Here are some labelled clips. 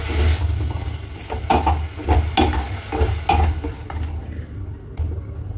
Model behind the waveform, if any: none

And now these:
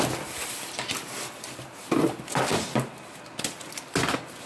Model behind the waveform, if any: none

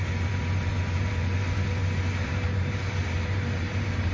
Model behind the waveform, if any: vocoder, BigVGAN v2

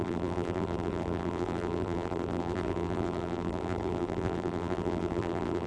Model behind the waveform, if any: vocoder, BigVGAN v2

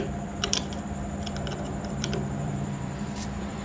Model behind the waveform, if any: vocoder, BigVGAN v2